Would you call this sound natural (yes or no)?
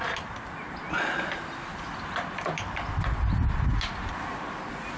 yes